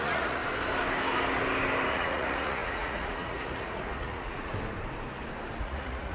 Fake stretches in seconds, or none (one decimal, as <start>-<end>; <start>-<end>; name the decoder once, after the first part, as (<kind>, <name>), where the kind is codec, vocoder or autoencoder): 0.0-0.4 (vocoder, Vocos); 1.9-4.5; 5.6-6.1